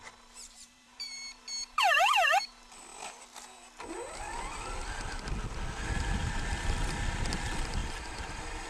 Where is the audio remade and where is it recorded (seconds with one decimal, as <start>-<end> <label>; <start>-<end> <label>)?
0.0-0.4 recorded; 0.4-2.4 remade; 2.4-7.8 recorded; 7.8-8.7 remade